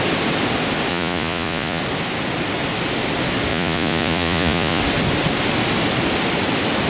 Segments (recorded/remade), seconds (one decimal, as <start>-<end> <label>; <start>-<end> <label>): 0.0-0.9 recorded; 0.9-1.8 remade; 1.8-3.5 recorded; 3.5-4.8 remade; 4.8-6.9 recorded